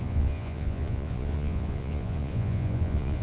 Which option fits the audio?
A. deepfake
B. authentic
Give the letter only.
A